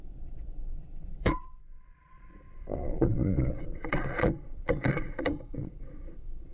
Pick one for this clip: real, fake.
fake